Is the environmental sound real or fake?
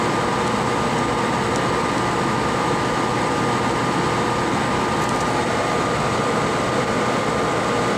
real